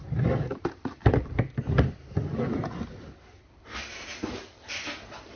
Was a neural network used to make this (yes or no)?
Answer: no